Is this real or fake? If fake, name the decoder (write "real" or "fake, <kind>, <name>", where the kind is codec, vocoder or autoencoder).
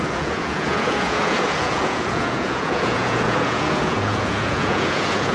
fake, vocoder, Vocos